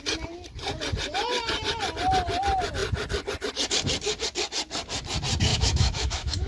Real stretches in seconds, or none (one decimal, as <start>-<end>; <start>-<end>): 0.0-5.5